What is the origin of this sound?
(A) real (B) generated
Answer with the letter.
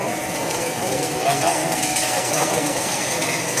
B